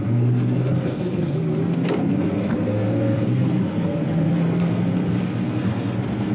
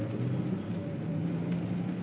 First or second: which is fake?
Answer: first